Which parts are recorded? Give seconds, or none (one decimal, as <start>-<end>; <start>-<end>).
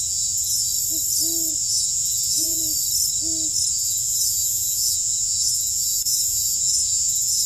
0.7-1.6; 2.6-3.7